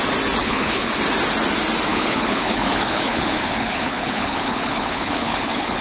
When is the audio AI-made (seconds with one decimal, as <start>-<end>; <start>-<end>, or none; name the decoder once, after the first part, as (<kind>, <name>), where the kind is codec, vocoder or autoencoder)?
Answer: 0.4-0.9 (codec, HILCodec); 1.9-5.8